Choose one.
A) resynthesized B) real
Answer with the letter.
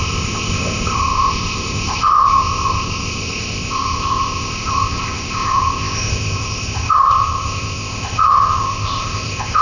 A